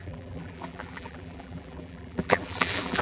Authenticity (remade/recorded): remade